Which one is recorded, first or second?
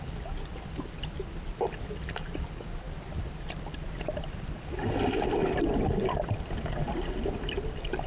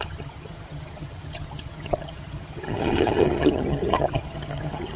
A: first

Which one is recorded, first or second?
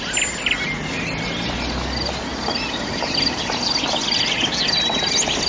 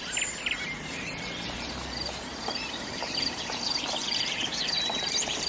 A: first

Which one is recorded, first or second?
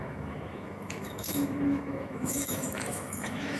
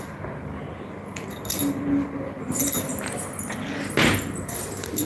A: second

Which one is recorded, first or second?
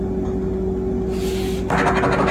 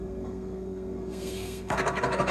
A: first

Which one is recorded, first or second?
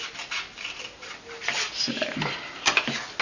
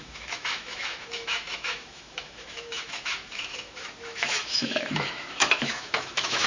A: first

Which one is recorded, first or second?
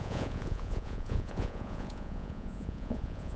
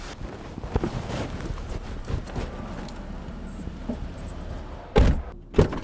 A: second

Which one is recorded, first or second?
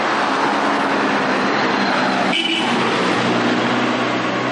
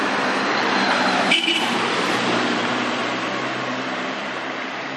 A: first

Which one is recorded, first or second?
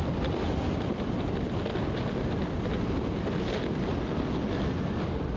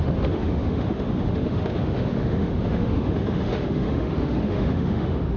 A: first